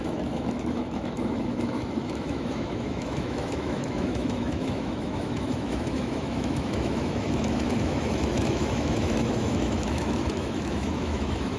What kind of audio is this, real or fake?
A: fake